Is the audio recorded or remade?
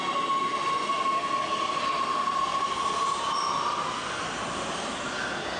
recorded